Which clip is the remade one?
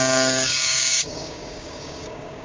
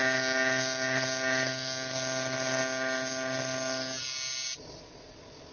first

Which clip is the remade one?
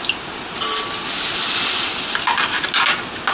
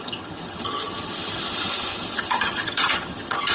second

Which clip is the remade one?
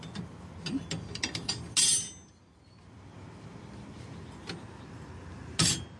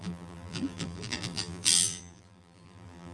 second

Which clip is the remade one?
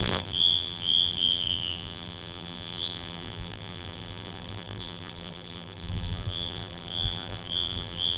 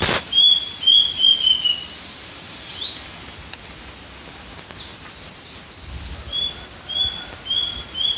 first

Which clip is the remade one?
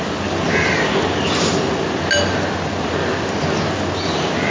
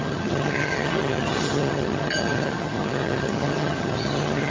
second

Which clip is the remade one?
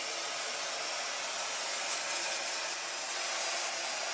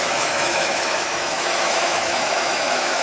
second